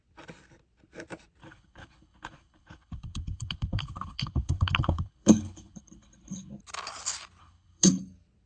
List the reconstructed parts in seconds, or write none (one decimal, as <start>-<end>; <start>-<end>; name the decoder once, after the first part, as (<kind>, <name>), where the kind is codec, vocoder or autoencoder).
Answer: 1.4-6.5 (codec, HILCodec); 7.4-8.0